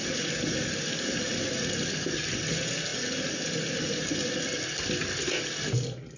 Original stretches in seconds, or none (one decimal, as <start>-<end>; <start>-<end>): 0.0-6.2